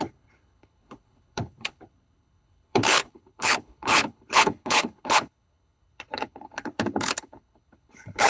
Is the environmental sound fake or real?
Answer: fake